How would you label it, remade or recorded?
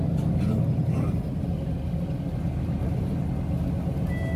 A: recorded